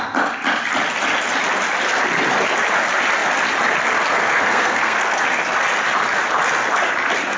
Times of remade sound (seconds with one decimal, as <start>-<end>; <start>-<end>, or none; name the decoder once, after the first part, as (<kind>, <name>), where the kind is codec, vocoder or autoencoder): 4.2-5.2 (codec, SNAC)